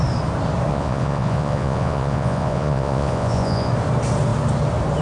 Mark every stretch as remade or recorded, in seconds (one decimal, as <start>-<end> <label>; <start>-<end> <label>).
0.0-0.7 recorded; 0.7-3.7 remade; 3.7-5.0 recorded